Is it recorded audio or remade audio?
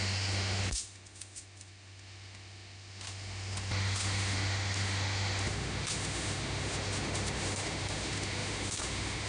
remade